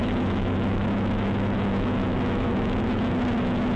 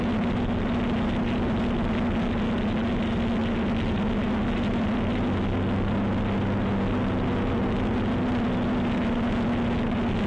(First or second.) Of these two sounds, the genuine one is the second